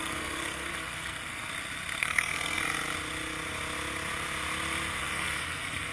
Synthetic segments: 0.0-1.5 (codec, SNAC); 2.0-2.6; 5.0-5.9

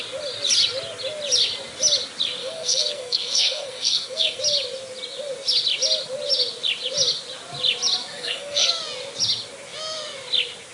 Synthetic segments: 2.4-4.4 (codec, SNAC); 8.1-8.7

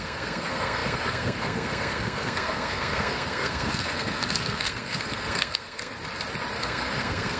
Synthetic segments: 0.0-5.9 (codec, SNAC); 6.6-7.4

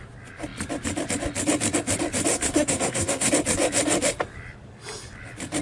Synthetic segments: 2.3-3.3 (codec, SNAC)